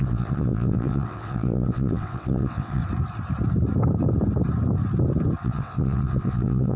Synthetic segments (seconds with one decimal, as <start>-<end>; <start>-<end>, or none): 0.0-2.8; 5.4-6.8